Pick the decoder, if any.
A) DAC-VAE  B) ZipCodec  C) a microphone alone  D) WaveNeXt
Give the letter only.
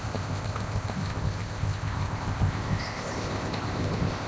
B